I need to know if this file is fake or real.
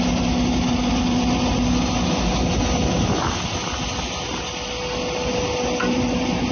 real